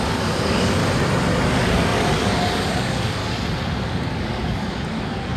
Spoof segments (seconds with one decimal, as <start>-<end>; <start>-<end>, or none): 0.0-0.8; 1.5-3.2; 3.8-5.4